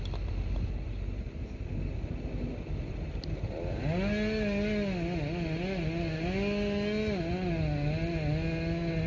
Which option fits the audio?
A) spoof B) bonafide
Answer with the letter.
B